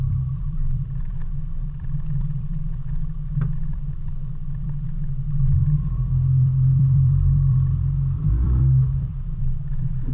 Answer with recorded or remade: remade